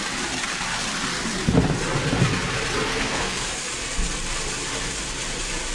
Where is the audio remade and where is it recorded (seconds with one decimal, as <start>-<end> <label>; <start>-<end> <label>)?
0.0-2.9 recorded; 2.9-3.5 remade; 3.5-5.7 recorded